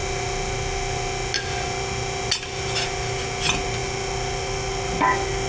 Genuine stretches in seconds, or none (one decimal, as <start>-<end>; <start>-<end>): 0.0-5.5